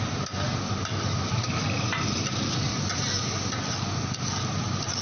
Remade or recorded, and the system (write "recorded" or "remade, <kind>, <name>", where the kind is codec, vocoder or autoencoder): recorded